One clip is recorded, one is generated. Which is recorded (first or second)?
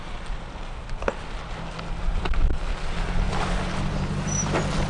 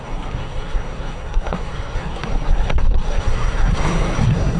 first